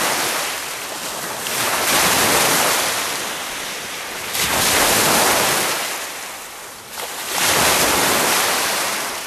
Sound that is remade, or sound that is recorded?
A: recorded